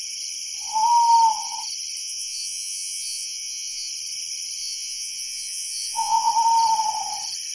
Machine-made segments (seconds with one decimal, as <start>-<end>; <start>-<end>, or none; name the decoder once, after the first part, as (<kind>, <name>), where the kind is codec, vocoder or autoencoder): 2.0-3.9 (vocoder, Vocos); 4.6-6.3